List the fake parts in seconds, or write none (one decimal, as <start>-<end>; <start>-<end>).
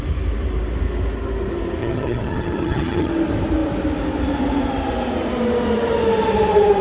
1.8-3.1